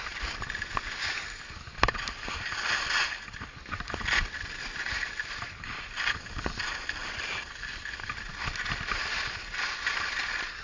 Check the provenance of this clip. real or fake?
real